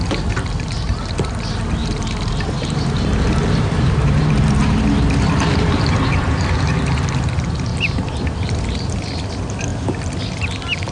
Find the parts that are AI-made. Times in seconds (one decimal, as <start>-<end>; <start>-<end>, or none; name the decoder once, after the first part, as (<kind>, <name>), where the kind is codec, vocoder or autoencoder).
1.8-6.4 (vocoder, BigVGAN v2); 7.7-9.0